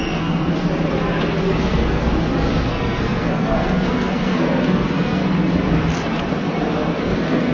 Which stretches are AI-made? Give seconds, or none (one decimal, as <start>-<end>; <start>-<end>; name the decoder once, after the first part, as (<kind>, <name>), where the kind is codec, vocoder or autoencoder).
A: 0.0-0.5 (codec, SNAC); 1.6-2.0; 2.7-5.2; 7.0-7.5